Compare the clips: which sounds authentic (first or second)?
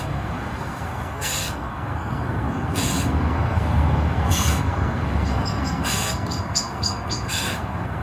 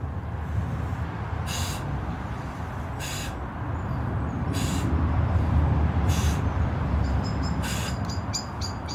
second